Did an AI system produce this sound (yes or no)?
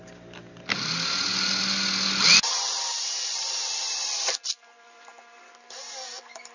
yes